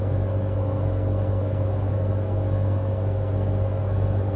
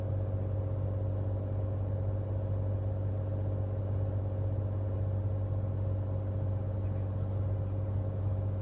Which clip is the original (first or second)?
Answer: second